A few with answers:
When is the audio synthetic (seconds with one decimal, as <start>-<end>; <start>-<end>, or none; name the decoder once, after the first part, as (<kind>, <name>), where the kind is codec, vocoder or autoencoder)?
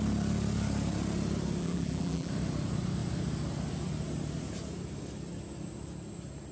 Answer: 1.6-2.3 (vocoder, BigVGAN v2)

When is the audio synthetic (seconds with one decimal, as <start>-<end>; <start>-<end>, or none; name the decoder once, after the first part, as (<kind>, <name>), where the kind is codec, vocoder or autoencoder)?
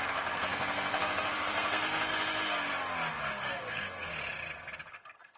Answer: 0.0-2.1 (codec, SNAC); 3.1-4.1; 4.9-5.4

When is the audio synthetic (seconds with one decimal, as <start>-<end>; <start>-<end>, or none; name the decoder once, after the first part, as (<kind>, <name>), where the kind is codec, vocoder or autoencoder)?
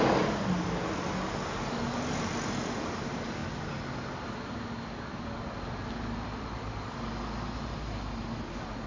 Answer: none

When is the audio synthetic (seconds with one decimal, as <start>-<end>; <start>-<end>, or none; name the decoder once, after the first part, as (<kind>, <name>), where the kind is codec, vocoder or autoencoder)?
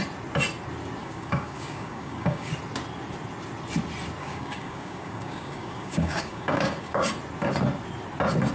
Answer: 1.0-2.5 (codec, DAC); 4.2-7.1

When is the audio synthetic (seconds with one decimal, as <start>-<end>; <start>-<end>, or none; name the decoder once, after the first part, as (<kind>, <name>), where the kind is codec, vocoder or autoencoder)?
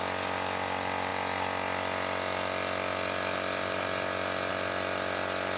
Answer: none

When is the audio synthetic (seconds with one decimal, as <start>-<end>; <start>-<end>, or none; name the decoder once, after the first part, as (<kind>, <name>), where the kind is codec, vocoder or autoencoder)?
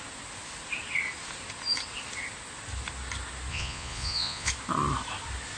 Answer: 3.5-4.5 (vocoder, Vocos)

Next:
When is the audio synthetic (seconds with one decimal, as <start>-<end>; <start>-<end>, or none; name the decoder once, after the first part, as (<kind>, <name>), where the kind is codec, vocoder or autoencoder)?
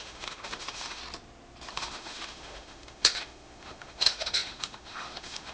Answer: 0.0-1.0 (autoencoder, DAC-VAE); 1.7-5.5